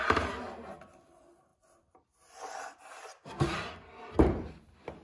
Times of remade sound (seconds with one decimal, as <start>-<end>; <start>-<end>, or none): 1.5-4.5